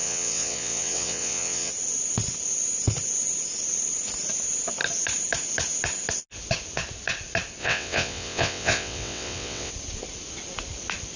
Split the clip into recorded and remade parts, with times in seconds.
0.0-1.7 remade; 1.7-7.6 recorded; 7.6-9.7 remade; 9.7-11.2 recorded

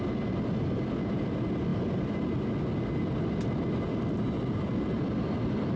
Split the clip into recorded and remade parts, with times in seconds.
0.0-5.8 recorded

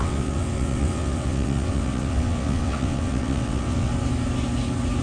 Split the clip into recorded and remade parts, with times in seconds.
0.0-3.9 remade; 3.9-5.0 recorded

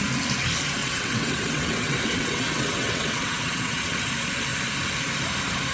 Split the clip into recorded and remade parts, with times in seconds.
0.0-0.8 recorded; 0.8-4.1 remade; 4.1-5.7 recorded

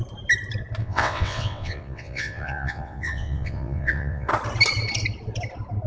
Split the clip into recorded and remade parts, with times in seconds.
0.0-0.8 recorded; 0.8-4.3 remade; 4.3-5.9 recorded

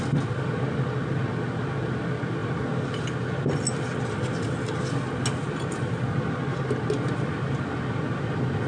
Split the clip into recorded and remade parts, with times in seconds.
0.0-8.7 recorded

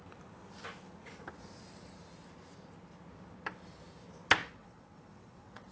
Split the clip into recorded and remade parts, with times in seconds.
0.0-4.4 recorded; 4.4-5.7 remade